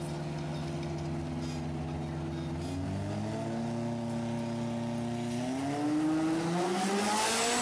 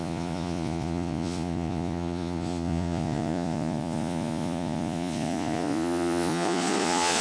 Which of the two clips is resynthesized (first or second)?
second